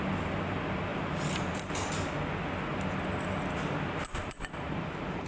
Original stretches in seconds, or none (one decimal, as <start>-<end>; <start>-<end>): 0.0-0.9; 1.9-4.2